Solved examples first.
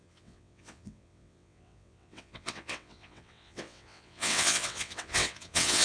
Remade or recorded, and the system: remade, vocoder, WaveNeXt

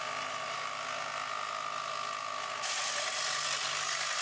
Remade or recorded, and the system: recorded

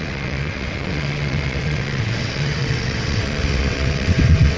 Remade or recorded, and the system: remade, vocoder, WaveNeXt